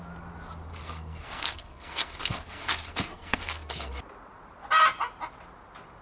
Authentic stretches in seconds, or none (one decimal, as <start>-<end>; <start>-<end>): 0.0-0.8; 3.9-6.0